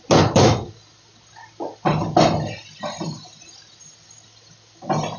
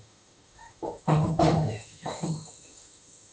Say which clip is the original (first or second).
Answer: first